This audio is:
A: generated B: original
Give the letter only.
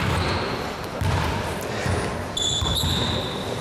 B